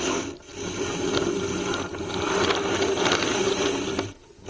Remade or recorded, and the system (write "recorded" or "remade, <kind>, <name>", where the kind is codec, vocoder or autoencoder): recorded